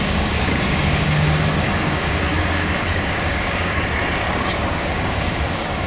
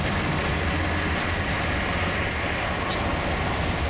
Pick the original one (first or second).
second